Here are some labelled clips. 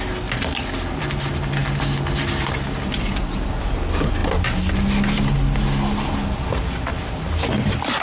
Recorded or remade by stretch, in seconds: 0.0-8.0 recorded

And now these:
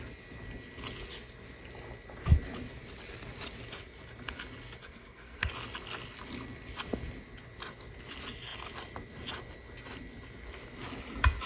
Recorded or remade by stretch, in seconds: 0.0-4.8 recorded; 4.8-5.5 remade; 5.5-11.5 recorded